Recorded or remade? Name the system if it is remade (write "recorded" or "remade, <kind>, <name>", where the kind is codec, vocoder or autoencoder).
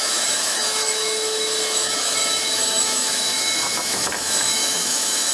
remade, autoencoder, DAC-VAE